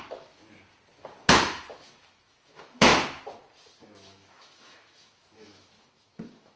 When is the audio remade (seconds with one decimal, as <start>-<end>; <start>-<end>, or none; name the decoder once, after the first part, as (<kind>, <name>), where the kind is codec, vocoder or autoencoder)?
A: 0.0-0.4 (autoencoder, DAC-VAE); 1.3-2.9; 3.8-6.6